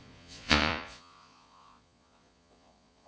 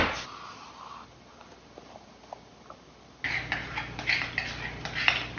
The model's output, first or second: first